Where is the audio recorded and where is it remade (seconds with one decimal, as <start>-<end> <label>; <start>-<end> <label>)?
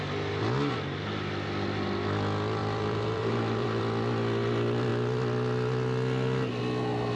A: 0.0-2.6 recorded; 2.6-3.8 remade; 3.8-7.2 recorded